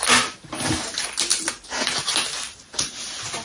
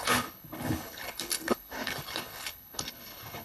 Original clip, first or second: first